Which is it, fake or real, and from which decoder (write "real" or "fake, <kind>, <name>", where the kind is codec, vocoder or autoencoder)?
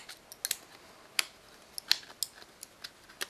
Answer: real